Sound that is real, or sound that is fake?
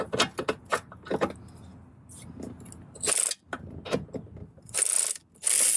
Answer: real